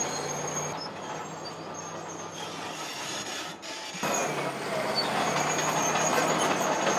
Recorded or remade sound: recorded